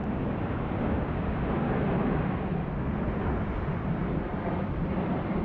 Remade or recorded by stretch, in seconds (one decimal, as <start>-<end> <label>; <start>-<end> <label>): 0.0-4.3 recorded; 4.3-5.4 remade